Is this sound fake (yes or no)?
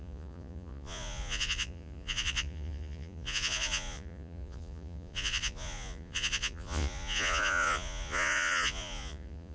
yes